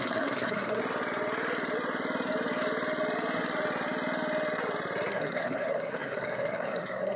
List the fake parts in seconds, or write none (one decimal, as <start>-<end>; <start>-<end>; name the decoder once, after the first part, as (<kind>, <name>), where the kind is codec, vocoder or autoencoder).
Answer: 0.0-0.8 (codec, SNAC); 5.1-7.2